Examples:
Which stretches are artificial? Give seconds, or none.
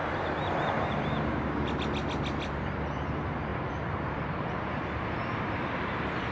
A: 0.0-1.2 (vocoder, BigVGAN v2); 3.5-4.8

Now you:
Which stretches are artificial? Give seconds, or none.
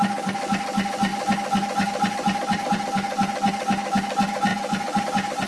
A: none